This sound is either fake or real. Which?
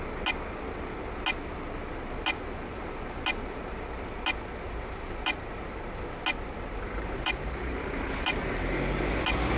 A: real